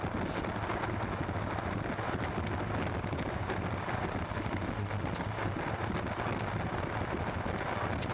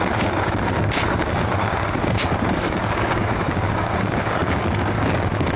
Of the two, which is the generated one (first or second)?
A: second